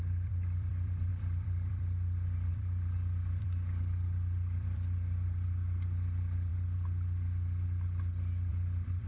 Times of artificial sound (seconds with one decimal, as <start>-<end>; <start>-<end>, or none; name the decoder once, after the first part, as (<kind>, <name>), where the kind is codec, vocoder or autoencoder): 0.0-6.5 (vocoder, BigVGAN v2); 8.5-9.1